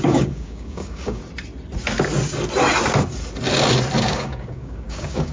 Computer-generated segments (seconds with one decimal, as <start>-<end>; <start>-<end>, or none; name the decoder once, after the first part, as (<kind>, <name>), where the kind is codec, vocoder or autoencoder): 0.0-1.2 (codec, DAC); 4.0-5.3